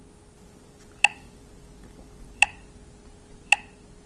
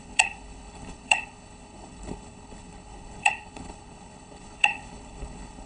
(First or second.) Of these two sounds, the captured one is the first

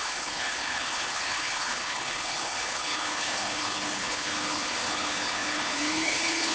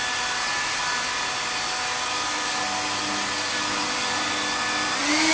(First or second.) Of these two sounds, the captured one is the second